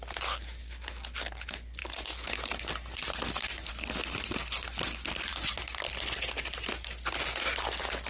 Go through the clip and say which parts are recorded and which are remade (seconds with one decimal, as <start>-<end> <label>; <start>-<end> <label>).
0.0-8.1 recorded